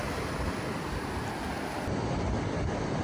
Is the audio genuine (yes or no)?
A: yes